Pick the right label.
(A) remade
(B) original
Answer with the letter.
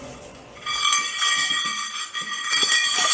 A